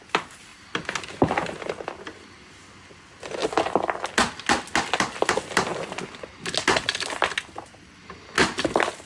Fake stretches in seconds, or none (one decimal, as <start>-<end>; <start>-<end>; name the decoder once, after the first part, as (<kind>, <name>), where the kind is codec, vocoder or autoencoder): none